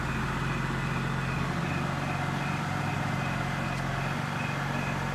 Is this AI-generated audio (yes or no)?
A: no